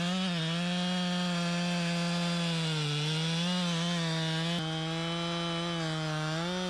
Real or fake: real